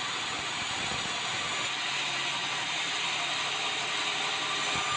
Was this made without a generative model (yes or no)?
yes